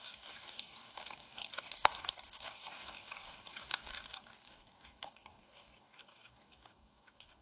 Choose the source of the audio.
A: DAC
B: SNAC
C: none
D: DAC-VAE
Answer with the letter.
A